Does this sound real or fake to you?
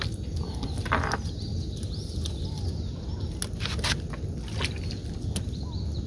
real